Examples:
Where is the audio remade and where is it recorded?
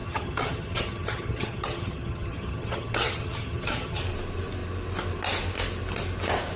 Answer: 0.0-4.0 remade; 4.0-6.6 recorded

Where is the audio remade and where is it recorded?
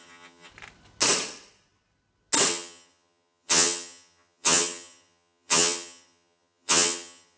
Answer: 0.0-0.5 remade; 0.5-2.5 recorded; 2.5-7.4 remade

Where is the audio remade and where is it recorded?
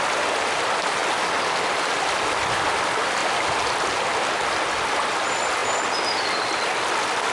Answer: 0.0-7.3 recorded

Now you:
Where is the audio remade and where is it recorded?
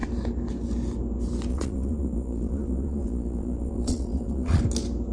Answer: 0.0-1.5 recorded; 1.5-4.6 remade; 4.6-5.1 recorded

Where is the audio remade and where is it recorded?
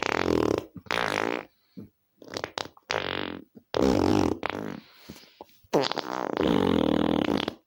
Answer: 0.0-7.7 recorded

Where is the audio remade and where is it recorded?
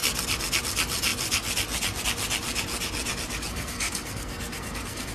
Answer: 0.0-3.5 recorded; 3.5-5.1 remade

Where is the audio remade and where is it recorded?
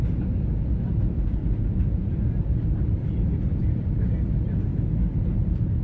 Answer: 0.0-1.4 recorded; 1.4-4.1 remade; 4.1-4.7 recorded; 4.7-5.8 remade